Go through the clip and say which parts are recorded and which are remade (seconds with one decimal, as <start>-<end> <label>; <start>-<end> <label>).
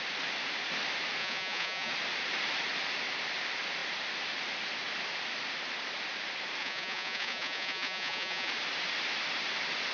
0.0-1.2 recorded; 1.2-1.9 remade; 1.9-6.6 recorded; 6.6-8.5 remade; 8.5-9.9 recorded